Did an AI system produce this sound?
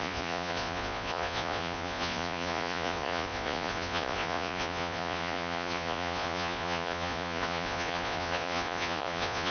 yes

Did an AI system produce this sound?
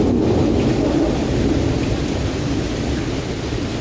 no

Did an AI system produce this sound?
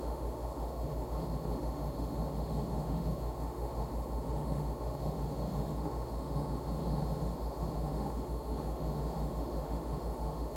yes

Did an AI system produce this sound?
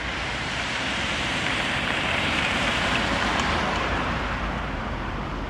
yes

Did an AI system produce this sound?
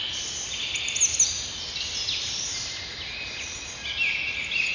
no